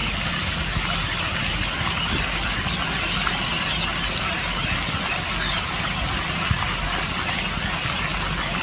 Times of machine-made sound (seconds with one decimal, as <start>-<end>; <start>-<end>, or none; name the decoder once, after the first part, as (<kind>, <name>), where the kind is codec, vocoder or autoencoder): none